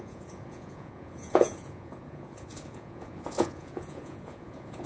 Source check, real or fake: fake